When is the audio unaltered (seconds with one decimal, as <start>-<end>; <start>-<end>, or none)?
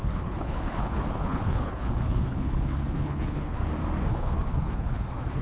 3.6-4.1